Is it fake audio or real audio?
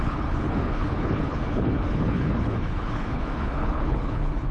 fake